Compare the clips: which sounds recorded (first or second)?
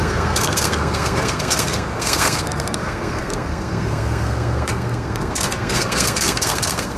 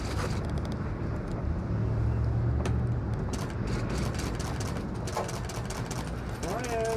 second